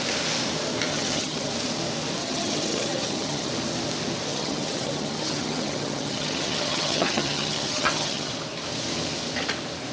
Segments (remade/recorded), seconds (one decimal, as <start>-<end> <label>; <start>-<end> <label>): 0.0-0.9 recorded; 0.9-1.5 remade; 1.5-2.2 recorded; 2.2-3.5 remade; 3.5-4.3 recorded; 4.3-8.3 remade; 8.3-9.9 recorded